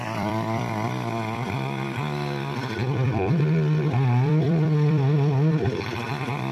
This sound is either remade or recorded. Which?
remade